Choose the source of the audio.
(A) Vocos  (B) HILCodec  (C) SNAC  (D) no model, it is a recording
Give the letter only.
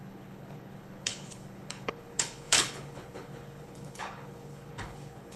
B